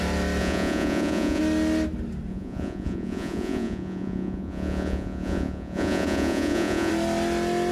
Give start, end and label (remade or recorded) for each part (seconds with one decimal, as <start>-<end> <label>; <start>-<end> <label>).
0.0-0.4 recorded; 0.4-1.4 remade; 1.4-2.3 recorded; 2.3-6.9 remade; 6.9-7.7 recorded